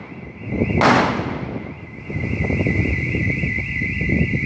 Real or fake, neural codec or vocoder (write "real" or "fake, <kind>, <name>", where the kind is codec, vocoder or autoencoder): real